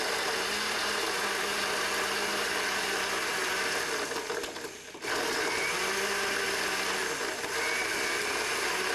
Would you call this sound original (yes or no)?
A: yes